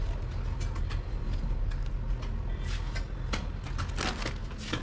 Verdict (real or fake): real